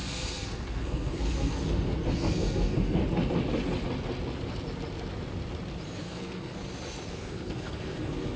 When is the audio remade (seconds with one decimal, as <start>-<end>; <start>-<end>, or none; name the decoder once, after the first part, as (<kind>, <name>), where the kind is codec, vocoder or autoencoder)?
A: 0.0-3.0 (codec, SNAC); 6.0-6.6; 7.1-8.4